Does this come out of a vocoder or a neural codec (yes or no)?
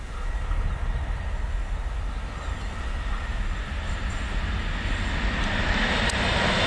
no